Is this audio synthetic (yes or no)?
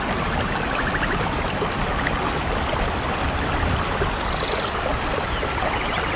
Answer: no